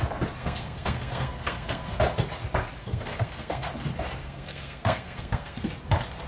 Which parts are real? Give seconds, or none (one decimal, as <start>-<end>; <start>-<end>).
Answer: 0.0-0.4; 2.0-2.8; 3.7-4.2; 5.7-6.3